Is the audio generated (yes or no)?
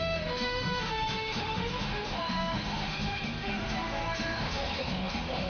yes